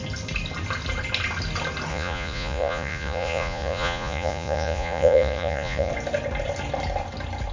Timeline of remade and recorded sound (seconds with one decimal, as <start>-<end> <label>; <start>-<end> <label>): 0.0-1.9 recorded; 1.9-5.9 remade; 5.9-7.5 recorded